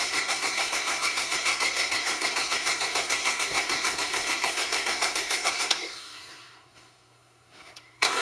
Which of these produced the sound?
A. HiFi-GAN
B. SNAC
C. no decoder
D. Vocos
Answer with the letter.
B